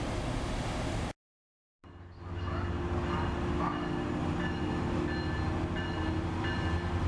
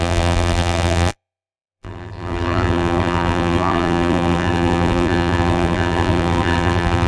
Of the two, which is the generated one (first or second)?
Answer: second